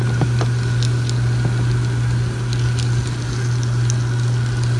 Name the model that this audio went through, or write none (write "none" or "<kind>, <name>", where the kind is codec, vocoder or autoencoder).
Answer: none